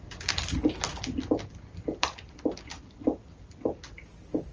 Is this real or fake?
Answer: real